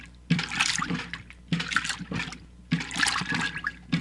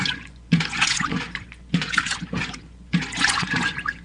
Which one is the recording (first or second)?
first